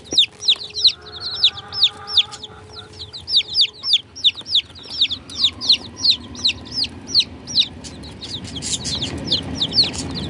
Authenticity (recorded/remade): recorded